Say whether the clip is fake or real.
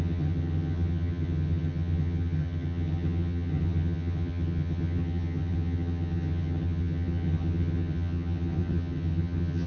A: fake